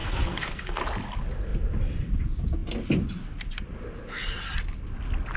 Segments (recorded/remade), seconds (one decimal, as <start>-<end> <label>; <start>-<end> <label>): 0.0-0.8 remade; 0.8-5.4 recorded